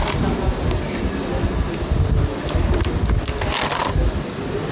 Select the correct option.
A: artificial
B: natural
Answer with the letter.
B